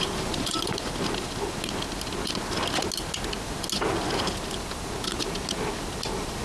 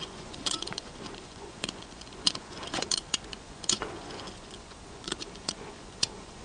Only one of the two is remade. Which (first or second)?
second